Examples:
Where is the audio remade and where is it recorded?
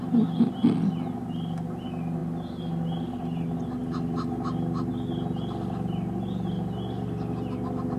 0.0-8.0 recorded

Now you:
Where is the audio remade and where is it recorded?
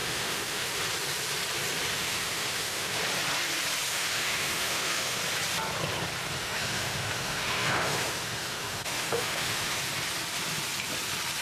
0.0-0.8 remade; 0.8-1.9 recorded; 1.9-3.0 remade; 3.0-3.9 recorded; 3.9-5.2 remade; 5.2-6.4 recorded; 6.4-9.8 remade; 9.8-11.4 recorded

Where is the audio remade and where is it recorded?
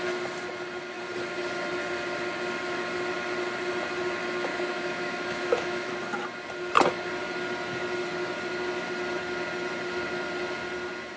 0.0-4.5 recorded; 4.5-5.9 remade; 5.9-11.2 recorded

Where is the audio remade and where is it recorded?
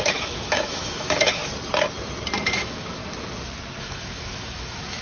0.0-1.4 remade; 1.4-2.5 recorded; 2.5-3.0 remade; 3.0-3.8 recorded; 3.8-5.0 remade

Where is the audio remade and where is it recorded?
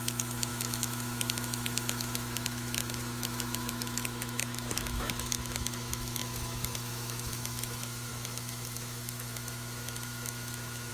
0.0-10.9 remade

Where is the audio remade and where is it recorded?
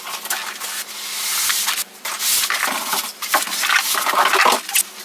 0.0-5.0 recorded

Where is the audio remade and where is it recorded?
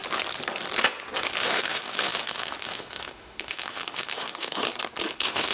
0.0-1.4 recorded; 1.4-4.6 remade; 4.6-5.1 recorded; 5.1-5.5 remade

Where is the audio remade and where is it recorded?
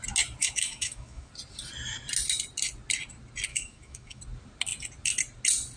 0.0-0.4 recorded; 0.4-1.3 remade; 1.3-3.5 recorded; 3.5-4.2 remade; 4.2-5.8 recorded